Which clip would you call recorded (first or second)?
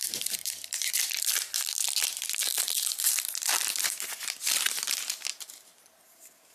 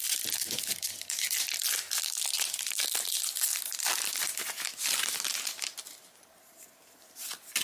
second